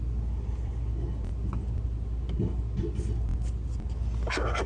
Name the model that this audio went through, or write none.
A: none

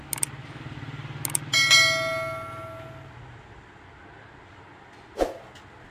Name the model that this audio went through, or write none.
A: none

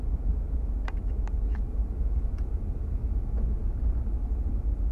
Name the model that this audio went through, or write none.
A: none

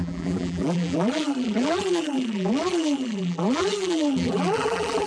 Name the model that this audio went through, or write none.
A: vocoder, BigVGAN v2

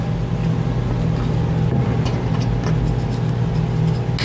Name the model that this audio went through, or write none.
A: none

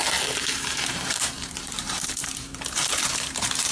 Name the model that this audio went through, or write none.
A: vocoder, BigVGAN v2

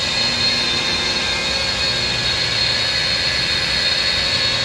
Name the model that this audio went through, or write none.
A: none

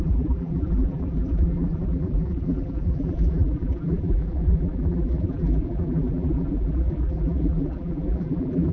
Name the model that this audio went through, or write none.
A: vocoder, BigVGAN v2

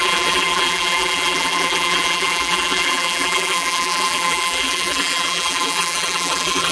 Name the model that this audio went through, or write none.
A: vocoder, BigVGAN v2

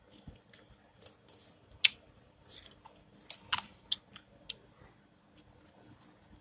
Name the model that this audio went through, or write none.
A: none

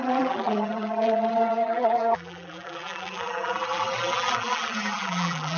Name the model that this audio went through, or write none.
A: vocoder, BigVGAN v2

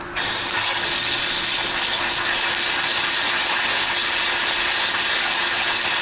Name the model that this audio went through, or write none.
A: none